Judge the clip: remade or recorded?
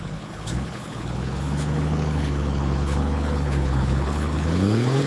remade